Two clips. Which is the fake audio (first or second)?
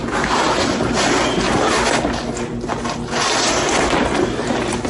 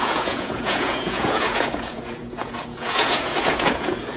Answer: second